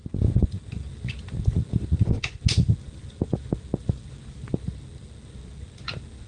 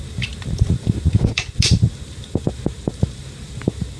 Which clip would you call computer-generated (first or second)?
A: second